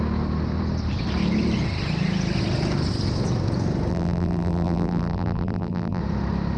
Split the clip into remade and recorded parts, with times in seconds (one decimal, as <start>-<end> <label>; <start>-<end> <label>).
0.0-3.9 recorded; 3.9-6.0 remade; 6.0-6.6 recorded